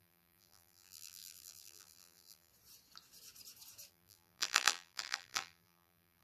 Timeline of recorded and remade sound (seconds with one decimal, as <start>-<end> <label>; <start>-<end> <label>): 0.0-2.5 remade; 2.5-3.9 recorded; 3.9-6.2 remade